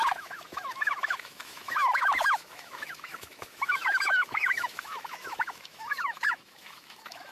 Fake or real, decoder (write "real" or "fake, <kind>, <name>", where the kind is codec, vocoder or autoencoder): fake, autoencoder, DAC-VAE